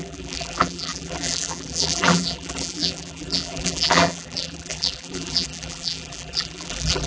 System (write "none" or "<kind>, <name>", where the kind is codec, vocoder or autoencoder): vocoder, BigVGAN v2